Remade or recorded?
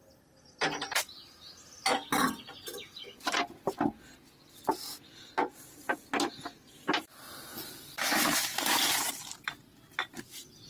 recorded